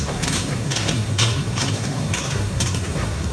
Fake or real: fake